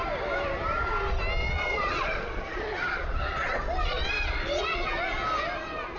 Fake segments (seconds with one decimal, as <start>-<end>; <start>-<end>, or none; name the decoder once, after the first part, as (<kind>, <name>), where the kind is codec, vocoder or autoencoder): 1.4-5.0 (vocoder, Vocos)